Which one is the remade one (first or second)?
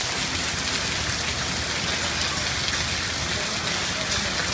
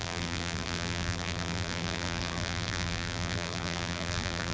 second